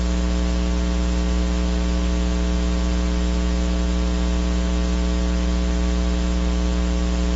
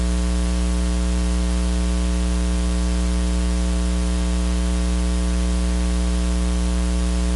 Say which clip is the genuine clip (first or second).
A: first